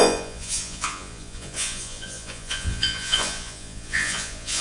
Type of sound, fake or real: fake